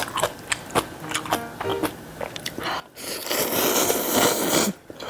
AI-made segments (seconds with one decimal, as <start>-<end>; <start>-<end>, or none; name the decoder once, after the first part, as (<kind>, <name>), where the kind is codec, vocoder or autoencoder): none